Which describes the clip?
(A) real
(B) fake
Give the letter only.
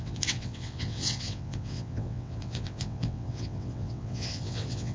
B